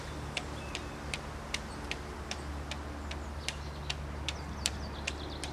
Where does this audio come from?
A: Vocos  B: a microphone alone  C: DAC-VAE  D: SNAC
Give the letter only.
B